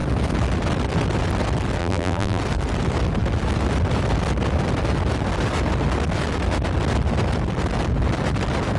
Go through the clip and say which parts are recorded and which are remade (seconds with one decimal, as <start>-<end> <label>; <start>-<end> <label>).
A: 0.0-1.8 recorded; 1.8-2.4 remade; 2.4-8.8 recorded